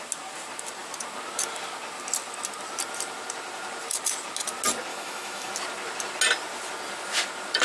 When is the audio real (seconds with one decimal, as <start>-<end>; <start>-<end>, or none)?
0.0-4.9; 5.5-7.6